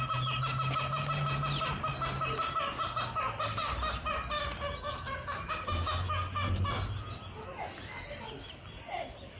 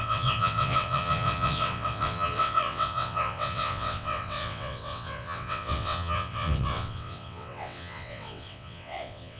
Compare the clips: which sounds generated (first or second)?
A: second